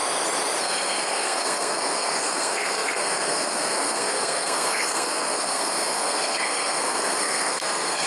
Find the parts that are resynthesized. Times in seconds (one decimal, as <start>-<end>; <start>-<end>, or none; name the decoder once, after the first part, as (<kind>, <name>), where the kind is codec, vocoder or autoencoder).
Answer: 0.6-8.1 (codec, SNAC)